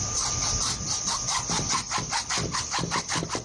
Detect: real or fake real